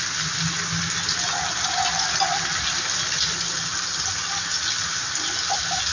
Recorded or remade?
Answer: recorded